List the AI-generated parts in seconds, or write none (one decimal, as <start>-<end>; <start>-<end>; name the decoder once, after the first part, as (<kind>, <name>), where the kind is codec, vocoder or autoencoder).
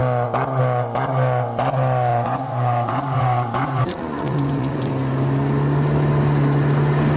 2.1-4.9 (vocoder, Vocos)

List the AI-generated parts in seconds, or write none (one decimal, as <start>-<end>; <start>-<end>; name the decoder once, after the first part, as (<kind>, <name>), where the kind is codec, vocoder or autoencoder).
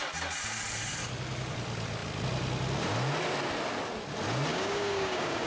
4.5-5.5 (codec, DAC)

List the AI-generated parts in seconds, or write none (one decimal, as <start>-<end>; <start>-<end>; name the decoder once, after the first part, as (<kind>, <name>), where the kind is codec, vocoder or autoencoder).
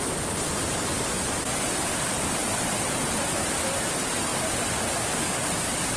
none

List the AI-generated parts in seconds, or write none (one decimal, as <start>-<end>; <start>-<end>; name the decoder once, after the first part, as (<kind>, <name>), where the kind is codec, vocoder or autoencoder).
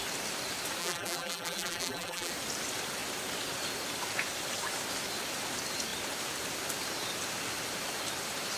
0.8-2.3 (vocoder, BigVGAN v2)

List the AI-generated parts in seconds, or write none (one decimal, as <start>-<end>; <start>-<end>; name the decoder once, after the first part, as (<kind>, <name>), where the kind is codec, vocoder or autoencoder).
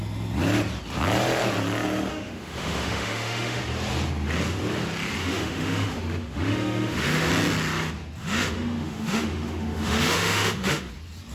2.1-3.6 (autoencoder, DAC-VAE); 5.2-7.3; 8.2-10.9